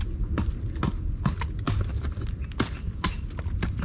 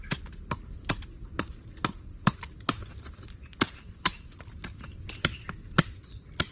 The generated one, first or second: second